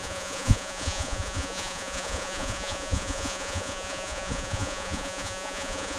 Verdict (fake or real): fake